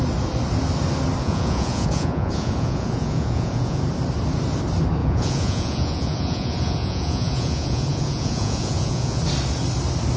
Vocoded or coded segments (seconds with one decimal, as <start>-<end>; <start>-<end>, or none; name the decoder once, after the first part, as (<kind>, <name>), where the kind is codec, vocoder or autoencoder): 1.2-3.8 (vocoder, Vocos); 5.0-9.2

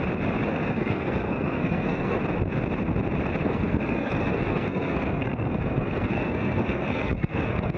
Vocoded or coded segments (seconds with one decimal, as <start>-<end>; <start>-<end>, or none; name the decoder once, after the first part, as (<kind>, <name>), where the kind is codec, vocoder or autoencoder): 0.5-2.2 (codec, SNAC); 3.4-7.8

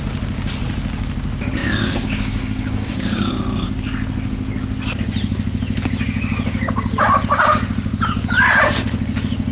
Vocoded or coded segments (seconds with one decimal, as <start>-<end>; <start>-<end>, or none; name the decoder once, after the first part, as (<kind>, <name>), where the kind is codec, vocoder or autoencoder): 1.6-3.3 (codec, DAC)

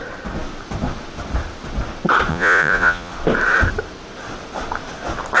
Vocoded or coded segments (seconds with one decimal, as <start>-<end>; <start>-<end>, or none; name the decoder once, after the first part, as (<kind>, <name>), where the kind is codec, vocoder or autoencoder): 2.3-3.1 (vocoder, Vocos)

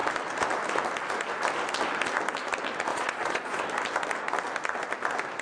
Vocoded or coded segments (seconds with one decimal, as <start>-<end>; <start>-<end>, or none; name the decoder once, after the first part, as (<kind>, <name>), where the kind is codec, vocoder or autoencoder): 2.9-3.6 (vocoder, Vocos)

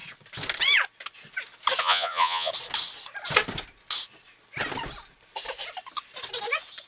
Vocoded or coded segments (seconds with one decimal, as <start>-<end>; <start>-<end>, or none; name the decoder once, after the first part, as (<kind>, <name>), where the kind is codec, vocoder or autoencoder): 1.8-2.5 (vocoder, Vocos)